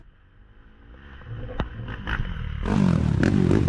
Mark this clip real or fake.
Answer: real